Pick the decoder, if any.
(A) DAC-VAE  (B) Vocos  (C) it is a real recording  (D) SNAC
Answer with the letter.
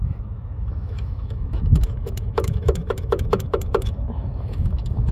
A